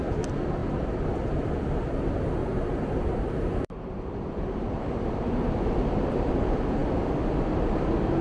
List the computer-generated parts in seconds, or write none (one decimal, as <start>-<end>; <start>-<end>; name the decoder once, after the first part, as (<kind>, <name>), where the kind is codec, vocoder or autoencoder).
2.4-6.3 (vocoder, BigVGAN v2)